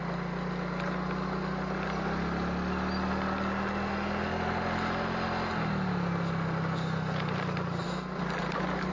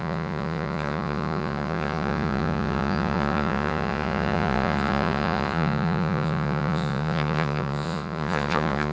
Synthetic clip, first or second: second